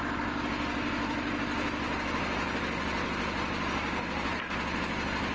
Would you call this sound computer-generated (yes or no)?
no